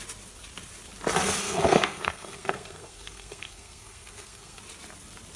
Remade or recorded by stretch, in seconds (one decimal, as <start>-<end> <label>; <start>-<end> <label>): 0.0-1.4 recorded; 1.4-4.6 remade; 4.6-5.4 recorded